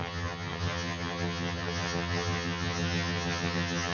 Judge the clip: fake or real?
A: fake